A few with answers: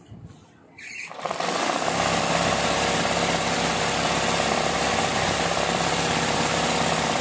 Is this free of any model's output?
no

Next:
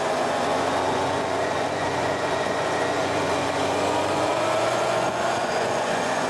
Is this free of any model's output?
no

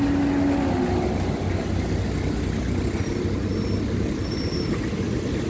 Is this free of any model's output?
yes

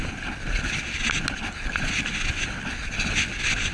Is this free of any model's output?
yes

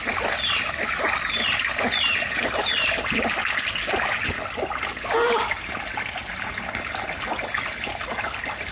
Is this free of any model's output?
yes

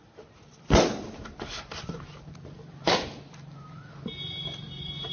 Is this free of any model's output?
yes